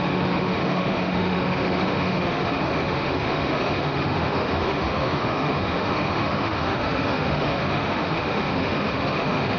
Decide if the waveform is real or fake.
fake